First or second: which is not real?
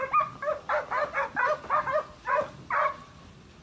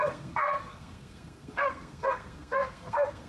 second